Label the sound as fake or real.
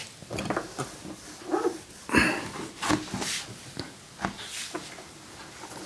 real